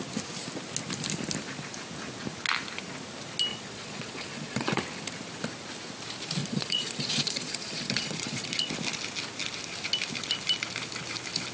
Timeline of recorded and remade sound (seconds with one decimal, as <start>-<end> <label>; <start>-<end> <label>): 0.0-3.5 recorded; 3.5-4.8 remade; 4.8-6.4 recorded; 6.4-8.7 remade; 8.7-11.5 recorded